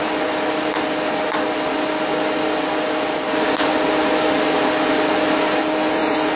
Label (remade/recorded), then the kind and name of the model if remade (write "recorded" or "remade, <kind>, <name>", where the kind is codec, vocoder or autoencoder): recorded